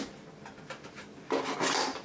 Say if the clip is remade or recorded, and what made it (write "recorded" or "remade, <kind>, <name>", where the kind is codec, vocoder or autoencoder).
recorded